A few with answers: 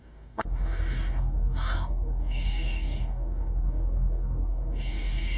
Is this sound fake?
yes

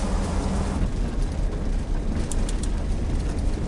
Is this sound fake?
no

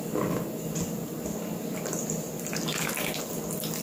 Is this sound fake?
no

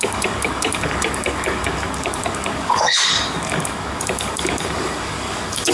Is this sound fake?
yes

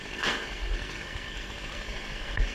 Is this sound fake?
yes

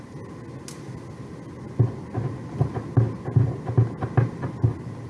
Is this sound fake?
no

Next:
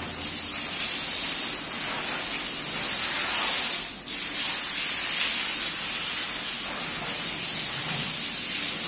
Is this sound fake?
no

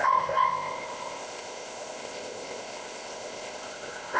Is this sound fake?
yes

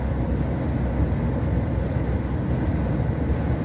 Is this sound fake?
no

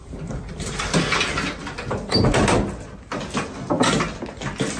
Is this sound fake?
no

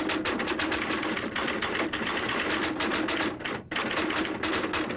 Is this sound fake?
no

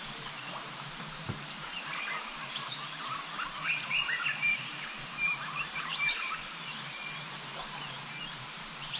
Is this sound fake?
yes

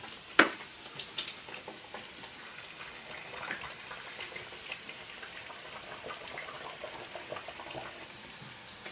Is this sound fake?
no